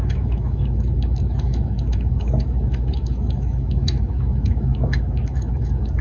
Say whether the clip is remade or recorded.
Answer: remade